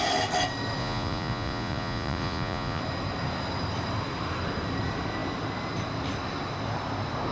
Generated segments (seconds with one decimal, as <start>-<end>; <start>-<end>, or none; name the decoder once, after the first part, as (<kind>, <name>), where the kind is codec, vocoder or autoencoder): 0.8-2.8 (vocoder, Vocos)